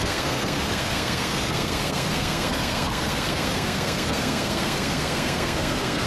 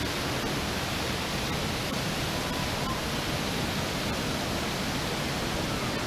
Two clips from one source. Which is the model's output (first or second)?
first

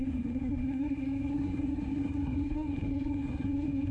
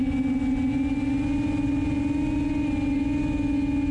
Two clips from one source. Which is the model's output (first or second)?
first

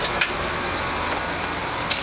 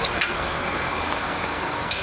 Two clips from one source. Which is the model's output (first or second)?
second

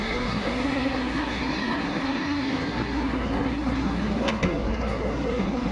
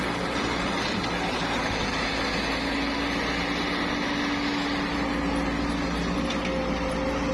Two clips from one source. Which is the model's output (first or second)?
first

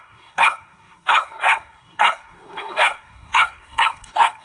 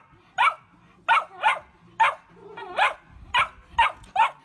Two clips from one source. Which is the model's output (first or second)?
first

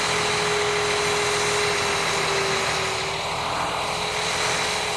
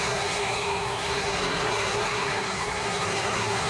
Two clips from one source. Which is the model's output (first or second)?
second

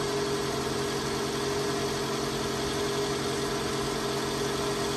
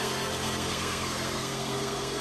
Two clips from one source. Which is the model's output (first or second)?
second